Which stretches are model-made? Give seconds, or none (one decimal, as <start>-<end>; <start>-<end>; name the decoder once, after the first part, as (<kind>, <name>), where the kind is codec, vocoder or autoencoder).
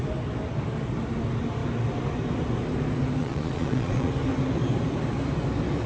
3.2-4.1 (vocoder, Vocos)